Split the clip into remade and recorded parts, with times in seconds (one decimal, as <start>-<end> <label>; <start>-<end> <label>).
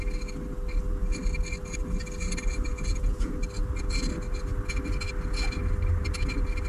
0.0-2.7 recorded; 2.7-3.3 remade; 3.3-6.7 recorded